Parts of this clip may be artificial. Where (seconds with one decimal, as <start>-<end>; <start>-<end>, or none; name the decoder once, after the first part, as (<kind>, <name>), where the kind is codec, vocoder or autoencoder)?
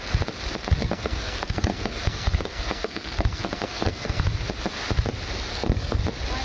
0.8-4.2 (codec, SNAC); 5.5-6.0